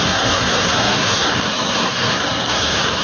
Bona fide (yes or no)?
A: no